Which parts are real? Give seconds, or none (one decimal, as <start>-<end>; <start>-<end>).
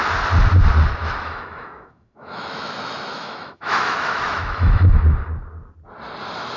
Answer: 0.0-1.0; 5.0-6.6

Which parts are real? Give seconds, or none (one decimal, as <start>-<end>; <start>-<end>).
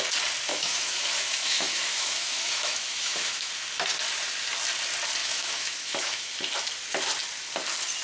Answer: 0.0-0.5; 3.5-5.2; 6.3-8.0